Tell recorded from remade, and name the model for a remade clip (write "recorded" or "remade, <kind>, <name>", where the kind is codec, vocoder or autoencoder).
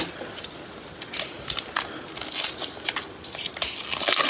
recorded